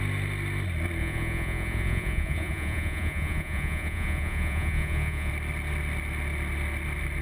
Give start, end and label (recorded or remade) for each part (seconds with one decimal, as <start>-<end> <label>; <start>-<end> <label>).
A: 0.0-1.0 recorded; 1.0-5.3 remade; 5.3-7.2 recorded